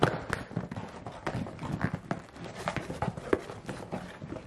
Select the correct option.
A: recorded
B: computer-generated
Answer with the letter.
A